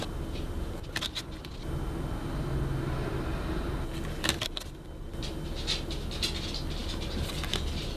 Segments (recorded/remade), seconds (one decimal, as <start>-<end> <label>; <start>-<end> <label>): 0.0-8.0 recorded